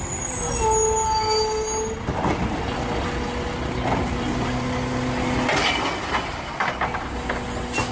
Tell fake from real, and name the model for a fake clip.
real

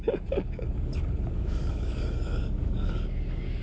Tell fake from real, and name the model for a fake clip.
fake, codec, DAC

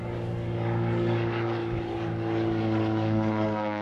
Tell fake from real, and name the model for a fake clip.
fake, codec, DAC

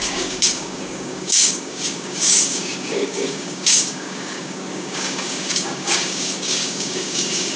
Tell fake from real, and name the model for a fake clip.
fake, codec, DAC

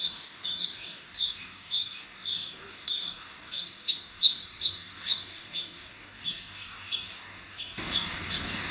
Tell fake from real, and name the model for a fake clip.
fake, codec, DAC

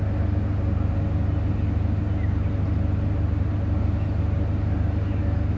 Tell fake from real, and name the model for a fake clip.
real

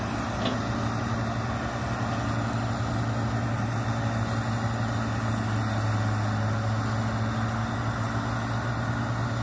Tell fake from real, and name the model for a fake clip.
real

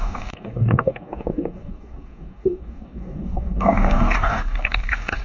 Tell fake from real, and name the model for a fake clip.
fake, codec, DAC